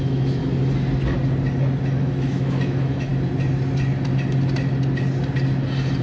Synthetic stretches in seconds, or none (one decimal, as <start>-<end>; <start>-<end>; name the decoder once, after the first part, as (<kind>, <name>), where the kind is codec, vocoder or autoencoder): 0.0-0.4 (autoencoder, DAC-VAE); 2.0-3.1